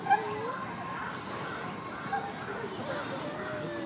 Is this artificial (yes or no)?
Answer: no